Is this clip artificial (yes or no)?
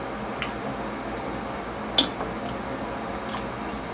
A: no